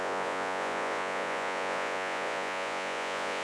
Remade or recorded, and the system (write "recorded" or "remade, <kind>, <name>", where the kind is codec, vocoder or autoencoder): remade, vocoder, Vocos